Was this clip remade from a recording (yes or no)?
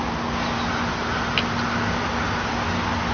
no